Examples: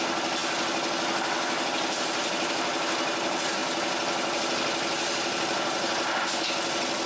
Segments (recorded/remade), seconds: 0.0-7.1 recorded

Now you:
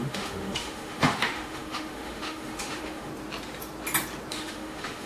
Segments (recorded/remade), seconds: 0.0-3.1 remade; 3.1-4.3 recorded; 4.3-5.1 remade

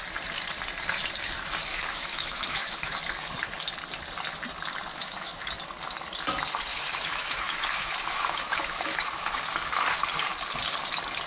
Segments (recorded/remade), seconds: 0.0-1.7 recorded; 1.7-3.0 remade; 3.0-4.9 recorded; 4.9-5.5 remade; 5.5-6.7 recorded; 6.7-9.4 remade; 9.4-11.3 recorded

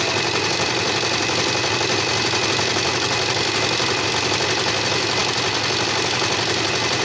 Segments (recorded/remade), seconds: 0.0-7.0 recorded

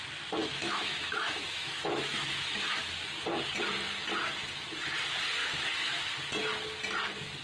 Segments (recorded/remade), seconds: 0.0-0.4 recorded; 0.4-2.8 remade; 2.8-5.4 recorded; 5.4-6.0 remade; 6.0-7.4 recorded

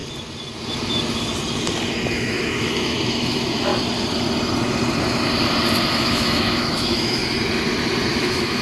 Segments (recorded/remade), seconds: 0.0-2.1 recorded; 2.1-3.7 remade; 3.7-5.9 recorded; 5.9-7.2 remade; 7.2-8.1 recorded; 8.1-8.6 remade